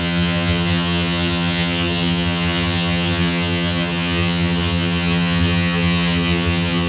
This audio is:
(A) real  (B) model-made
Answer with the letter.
B